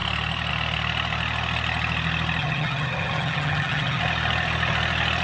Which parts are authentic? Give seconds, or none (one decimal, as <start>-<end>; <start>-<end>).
0.0-2.4; 4.0-5.2